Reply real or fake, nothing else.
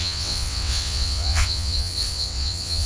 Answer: fake